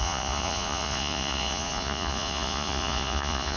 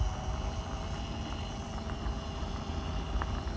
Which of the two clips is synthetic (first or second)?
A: first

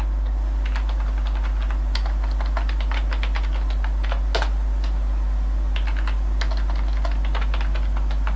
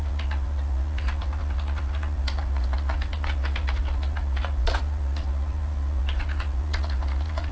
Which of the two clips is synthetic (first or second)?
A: second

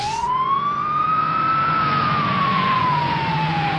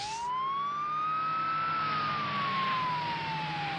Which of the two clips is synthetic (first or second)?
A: first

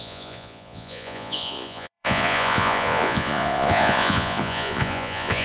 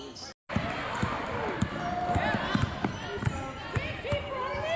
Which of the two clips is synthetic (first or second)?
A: first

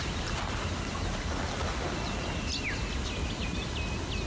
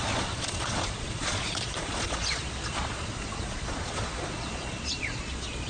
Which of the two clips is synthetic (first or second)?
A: second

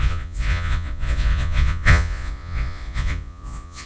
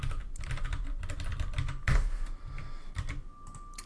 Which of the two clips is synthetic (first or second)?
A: first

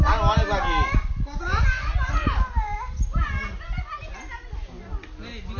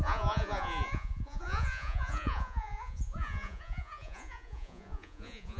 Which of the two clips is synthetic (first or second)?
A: second